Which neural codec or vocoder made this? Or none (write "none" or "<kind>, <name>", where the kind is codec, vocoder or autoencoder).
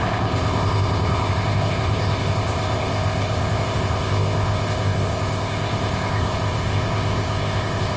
codec, ZipCodec